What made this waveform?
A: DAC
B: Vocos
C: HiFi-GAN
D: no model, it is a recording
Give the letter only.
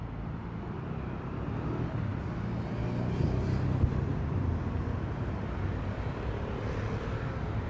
D